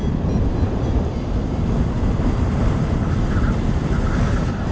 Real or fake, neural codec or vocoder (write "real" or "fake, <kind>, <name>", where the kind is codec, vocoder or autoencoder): fake, vocoder, BigVGAN v2